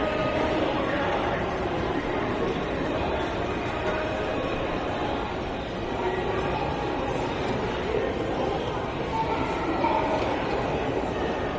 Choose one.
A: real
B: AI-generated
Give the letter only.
B